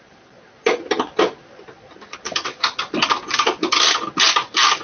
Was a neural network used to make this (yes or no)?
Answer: no